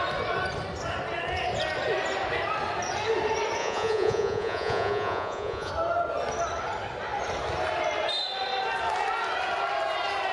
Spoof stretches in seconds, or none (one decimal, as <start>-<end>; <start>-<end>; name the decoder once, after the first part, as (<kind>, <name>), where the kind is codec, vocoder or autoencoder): 3.6-5.7 (vocoder, Vocos)